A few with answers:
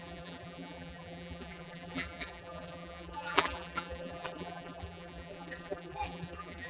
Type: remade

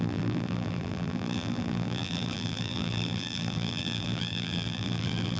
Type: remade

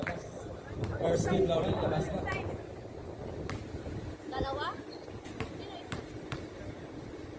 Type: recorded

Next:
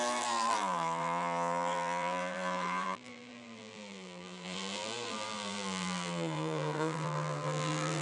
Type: remade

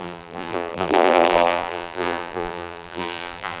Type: remade